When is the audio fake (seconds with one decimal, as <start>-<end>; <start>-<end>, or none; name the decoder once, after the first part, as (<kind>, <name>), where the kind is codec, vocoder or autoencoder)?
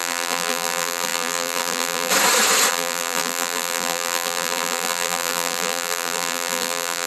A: 0.0-2.1 (vocoder, BigVGAN v2); 2.7-7.1